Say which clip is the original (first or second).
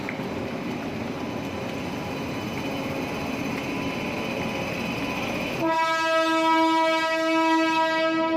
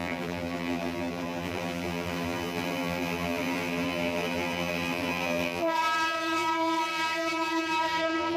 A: first